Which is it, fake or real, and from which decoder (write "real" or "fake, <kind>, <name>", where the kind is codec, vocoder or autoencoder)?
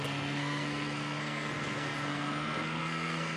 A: fake, codec, SNAC